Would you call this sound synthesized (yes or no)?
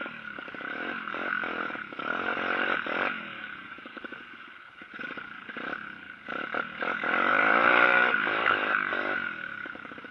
yes